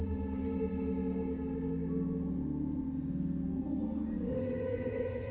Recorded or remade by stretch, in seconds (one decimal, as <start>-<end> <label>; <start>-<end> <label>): 0.0-4.3 recorded; 4.3-5.3 remade